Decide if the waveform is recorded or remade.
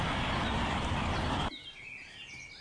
recorded